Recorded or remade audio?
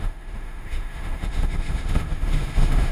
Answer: remade